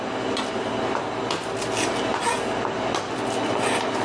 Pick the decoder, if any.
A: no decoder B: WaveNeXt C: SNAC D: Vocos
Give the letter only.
A